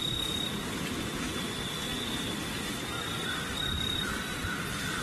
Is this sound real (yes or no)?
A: yes